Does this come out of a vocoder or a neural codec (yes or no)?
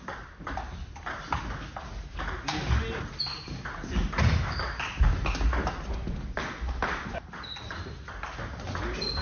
no